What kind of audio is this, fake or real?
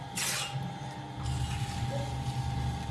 real